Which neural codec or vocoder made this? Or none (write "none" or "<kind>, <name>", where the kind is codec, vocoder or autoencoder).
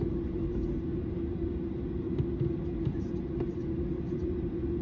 none